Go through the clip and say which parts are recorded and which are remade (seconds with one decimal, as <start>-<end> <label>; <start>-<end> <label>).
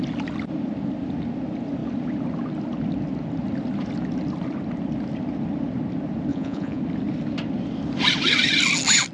0.0-6.3 recorded; 6.3-6.8 remade; 6.8-9.1 recorded